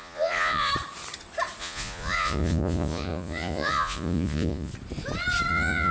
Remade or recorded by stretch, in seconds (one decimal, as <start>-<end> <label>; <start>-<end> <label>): 0.0-0.7 remade; 0.7-1.6 recorded; 1.6-4.7 remade; 4.7-5.5 recorded; 5.5-5.9 remade